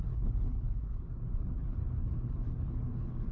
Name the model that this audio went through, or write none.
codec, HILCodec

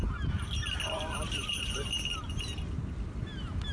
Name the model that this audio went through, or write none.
none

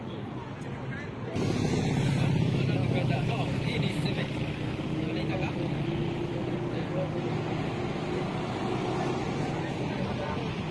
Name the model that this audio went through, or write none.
none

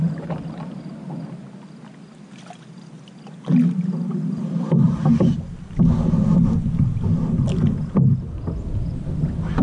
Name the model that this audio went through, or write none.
none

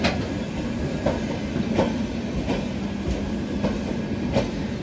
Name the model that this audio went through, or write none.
none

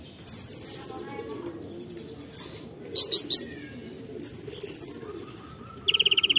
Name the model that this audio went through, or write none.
none